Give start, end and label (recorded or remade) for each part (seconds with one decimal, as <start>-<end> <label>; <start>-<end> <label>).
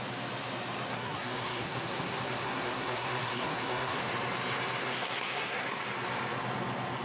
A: 0.0-0.9 recorded; 0.9-4.0 remade; 4.0-4.8 recorded; 4.8-5.8 remade; 5.8-7.0 recorded